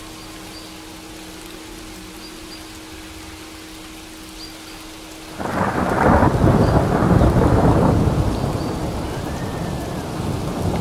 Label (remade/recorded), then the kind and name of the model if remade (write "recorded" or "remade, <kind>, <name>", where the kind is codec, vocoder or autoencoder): recorded